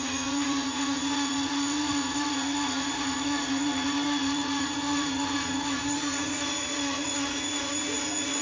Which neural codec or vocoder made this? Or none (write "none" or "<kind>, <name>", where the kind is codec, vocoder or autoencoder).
vocoder, Vocos